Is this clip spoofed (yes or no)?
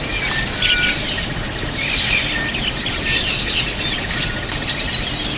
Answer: no